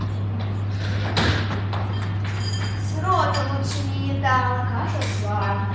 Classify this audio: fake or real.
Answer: real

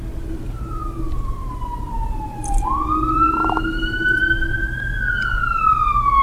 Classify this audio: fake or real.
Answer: real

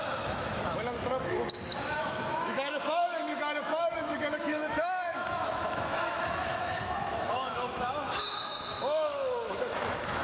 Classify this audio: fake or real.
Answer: fake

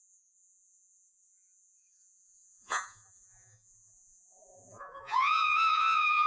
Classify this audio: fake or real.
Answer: fake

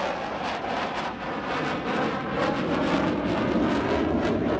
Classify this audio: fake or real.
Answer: real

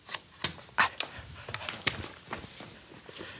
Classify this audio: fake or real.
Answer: real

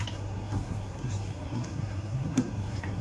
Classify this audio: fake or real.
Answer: fake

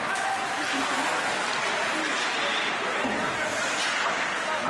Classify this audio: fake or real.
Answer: real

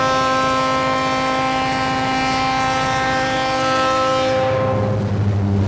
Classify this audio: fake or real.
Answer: real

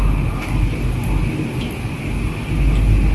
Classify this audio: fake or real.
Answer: real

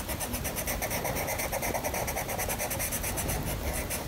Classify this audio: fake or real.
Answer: real